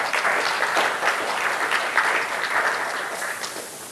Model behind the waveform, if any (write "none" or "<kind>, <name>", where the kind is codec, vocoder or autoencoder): none